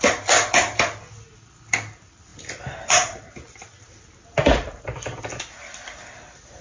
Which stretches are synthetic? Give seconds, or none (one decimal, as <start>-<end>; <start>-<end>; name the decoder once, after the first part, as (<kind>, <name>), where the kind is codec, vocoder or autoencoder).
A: none